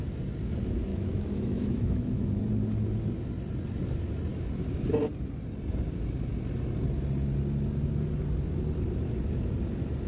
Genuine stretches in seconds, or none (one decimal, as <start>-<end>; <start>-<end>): 0.0-0.9; 2.4-10.1